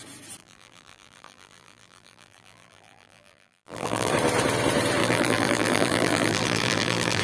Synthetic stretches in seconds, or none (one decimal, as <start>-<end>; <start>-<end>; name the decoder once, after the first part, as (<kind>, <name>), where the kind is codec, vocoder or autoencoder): 0.4-4.1 (vocoder, BigVGAN v2); 5.0-7.2